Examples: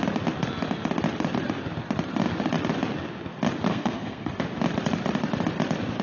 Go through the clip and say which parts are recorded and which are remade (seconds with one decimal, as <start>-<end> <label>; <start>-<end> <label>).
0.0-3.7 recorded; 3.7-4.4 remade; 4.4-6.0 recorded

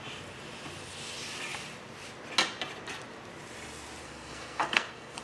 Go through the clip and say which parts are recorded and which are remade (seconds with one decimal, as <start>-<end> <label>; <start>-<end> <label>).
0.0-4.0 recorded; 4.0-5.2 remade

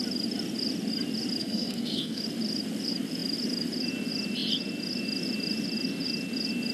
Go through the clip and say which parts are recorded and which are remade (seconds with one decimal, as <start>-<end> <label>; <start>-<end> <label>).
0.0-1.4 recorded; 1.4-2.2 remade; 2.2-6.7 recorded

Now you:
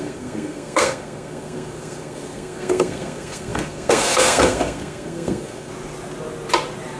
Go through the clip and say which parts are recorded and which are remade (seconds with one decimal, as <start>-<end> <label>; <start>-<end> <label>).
0.0-5.7 remade; 5.7-7.0 recorded

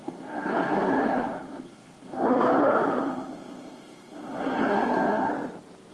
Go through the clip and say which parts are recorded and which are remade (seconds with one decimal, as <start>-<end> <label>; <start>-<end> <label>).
0.0-5.3 remade; 5.3-5.9 recorded